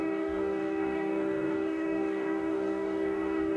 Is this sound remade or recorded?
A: remade